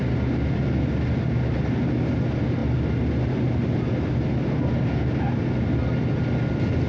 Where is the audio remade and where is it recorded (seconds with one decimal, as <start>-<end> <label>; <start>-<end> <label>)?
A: 0.0-6.9 recorded